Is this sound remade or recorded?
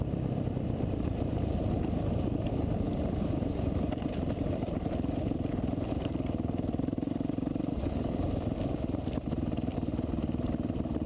remade